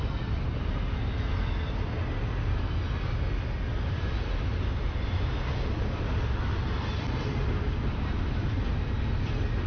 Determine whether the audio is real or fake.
real